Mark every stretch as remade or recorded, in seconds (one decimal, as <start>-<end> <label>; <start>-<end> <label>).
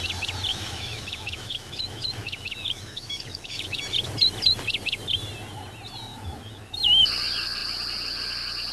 0.0-0.5 recorded; 0.5-3.8 remade; 3.8-6.1 recorded; 6.1-6.7 remade; 6.7-8.7 recorded